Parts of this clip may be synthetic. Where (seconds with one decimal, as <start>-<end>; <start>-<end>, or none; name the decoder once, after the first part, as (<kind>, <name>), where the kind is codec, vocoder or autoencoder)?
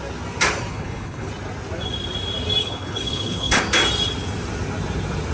0.7-1.3 (codec, HILCodec); 2.6-3.6